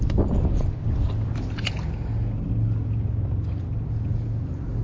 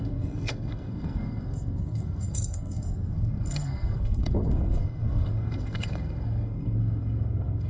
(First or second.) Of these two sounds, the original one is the first